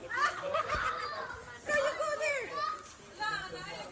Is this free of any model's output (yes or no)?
yes